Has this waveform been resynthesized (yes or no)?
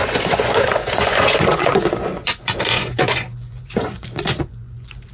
yes